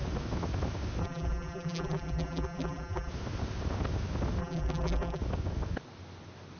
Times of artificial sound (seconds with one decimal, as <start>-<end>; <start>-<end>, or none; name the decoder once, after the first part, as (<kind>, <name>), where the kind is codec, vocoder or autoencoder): 1.0-3.1 (vocoder, BigVGAN v2); 4.4-5.2